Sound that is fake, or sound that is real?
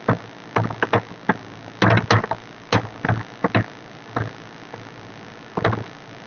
real